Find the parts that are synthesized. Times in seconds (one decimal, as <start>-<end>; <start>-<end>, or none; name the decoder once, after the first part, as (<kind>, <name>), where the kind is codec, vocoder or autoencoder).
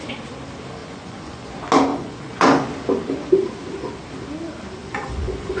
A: 0.8-1.5 (vocoder, Vocos); 1.9-2.7; 4.8-5.6